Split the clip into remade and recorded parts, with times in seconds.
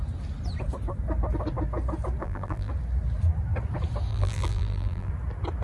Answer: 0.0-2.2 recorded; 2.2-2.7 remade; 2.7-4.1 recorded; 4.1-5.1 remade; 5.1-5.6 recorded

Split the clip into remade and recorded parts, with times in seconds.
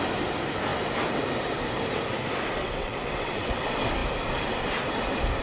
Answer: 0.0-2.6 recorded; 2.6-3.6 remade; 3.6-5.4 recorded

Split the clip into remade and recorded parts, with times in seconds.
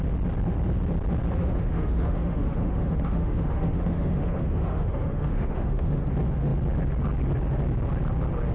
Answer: 0.0-1.4 recorded; 1.4-6.1 remade; 6.1-8.5 recorded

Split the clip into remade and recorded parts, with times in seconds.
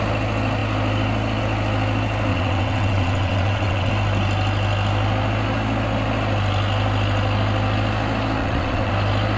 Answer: 0.0-2.3 recorded; 2.3-3.9 remade; 3.9-8.4 recorded; 8.4-8.9 remade; 8.9-9.4 recorded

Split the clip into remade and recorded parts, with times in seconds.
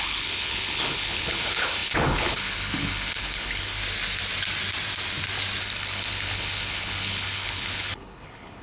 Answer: 0.0-3.8 remade; 3.8-5.6 recorded; 5.6-8.6 remade